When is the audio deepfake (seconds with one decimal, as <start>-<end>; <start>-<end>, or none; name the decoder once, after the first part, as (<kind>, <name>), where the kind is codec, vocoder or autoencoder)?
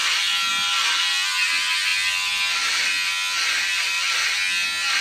none